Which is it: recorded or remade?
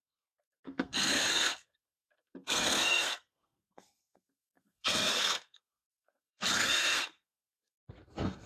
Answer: remade